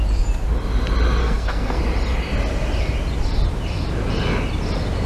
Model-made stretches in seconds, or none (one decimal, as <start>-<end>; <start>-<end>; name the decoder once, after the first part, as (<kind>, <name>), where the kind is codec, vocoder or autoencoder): 1.2-1.8 (codec, SNAC)